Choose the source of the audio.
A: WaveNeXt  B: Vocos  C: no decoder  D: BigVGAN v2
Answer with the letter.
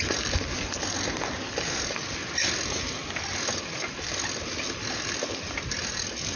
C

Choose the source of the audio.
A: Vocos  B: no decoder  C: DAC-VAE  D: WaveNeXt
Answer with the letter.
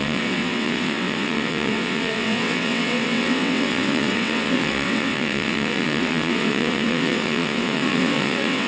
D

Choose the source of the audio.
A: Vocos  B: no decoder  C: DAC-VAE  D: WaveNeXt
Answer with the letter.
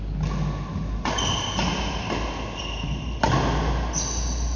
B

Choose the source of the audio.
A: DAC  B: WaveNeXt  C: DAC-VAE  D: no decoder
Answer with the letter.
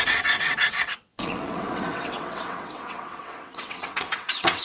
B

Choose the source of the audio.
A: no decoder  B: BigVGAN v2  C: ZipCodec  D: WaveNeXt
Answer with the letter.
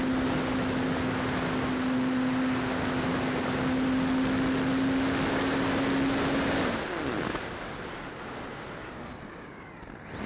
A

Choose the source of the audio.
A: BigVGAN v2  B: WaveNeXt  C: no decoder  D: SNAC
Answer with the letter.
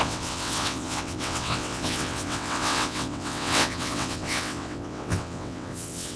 B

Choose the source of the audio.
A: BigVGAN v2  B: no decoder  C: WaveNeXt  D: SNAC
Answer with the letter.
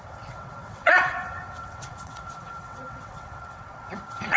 C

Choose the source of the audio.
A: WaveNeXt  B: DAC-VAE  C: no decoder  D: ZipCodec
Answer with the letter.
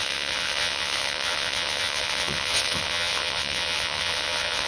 A